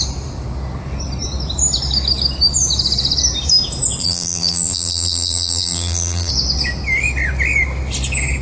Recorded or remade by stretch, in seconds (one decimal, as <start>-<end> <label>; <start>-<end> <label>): 0.0-4.0 recorded; 4.0-6.3 remade; 6.3-8.4 recorded

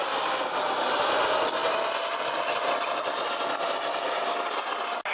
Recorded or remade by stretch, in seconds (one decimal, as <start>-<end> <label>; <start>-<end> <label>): 0.0-5.1 recorded

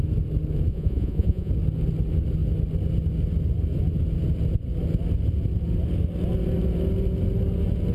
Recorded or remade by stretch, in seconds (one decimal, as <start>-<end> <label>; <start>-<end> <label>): 0.0-0.7 recorded; 0.7-1.5 remade; 1.5-7.9 recorded

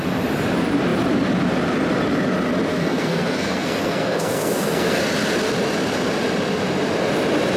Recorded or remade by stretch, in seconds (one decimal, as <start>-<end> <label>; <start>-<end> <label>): 0.0-2.7 recorded; 2.7-5.0 remade; 5.0-7.6 recorded

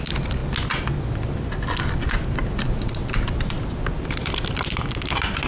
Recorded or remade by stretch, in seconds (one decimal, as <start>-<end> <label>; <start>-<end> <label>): 0.0-5.5 recorded

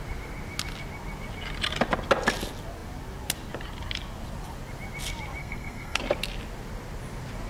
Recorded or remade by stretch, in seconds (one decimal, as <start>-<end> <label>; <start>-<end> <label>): 0.0-5.4 recorded; 5.4-6.0 remade; 6.0-7.5 recorded